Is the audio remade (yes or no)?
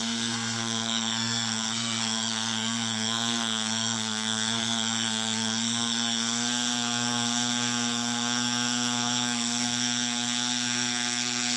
yes